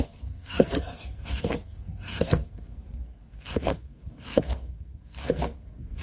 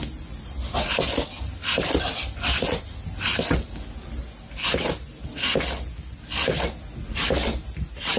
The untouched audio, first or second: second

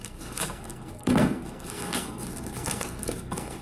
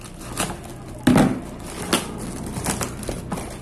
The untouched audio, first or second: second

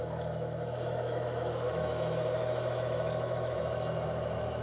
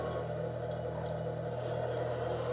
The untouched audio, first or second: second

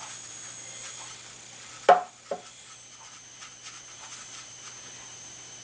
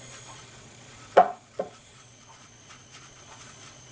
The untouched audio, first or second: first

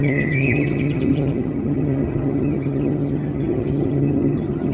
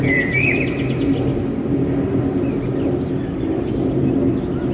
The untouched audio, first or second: second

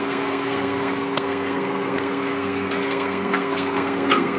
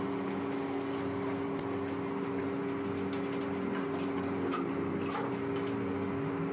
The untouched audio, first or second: second